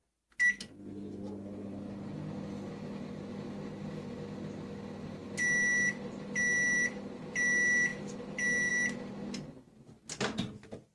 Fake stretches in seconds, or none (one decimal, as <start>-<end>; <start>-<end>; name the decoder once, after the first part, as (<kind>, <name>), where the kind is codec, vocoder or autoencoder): none